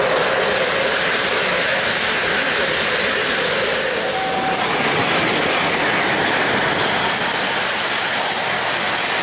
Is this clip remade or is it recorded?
recorded